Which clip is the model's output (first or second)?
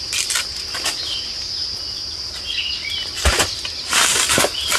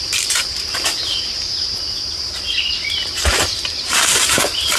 second